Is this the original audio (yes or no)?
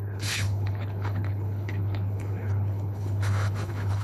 no